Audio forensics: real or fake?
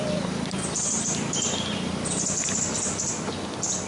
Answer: fake